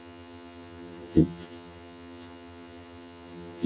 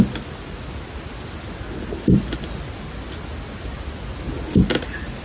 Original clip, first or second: second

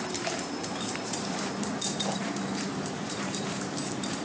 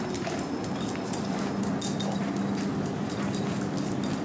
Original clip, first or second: second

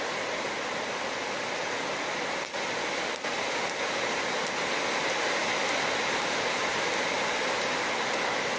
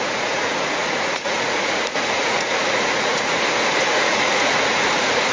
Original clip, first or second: first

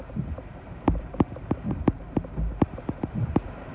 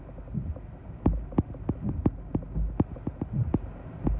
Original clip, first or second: second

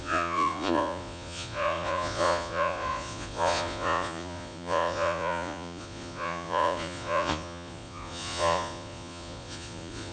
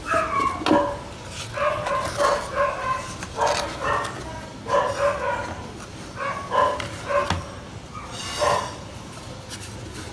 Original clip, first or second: second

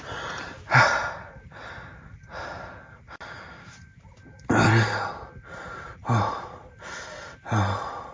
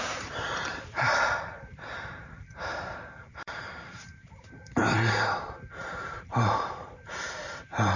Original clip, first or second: first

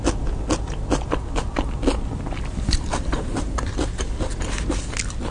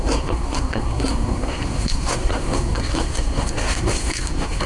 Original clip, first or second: first